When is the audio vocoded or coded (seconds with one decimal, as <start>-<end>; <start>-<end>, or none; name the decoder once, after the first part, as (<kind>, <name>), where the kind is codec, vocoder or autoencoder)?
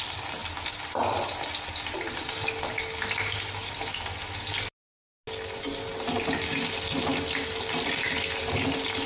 none